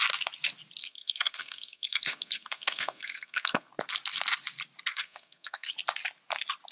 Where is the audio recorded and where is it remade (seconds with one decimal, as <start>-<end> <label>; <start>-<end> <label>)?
0.0-0.8 recorded; 0.8-3.7 remade; 3.7-4.9 recorded; 4.9-5.7 remade; 5.7-6.7 recorded